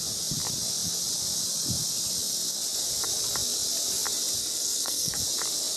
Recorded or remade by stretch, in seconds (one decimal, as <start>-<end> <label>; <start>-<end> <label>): 0.0-4.4 recorded; 4.4-5.2 remade; 5.2-5.8 recorded